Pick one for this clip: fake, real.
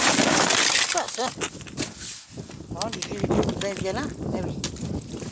real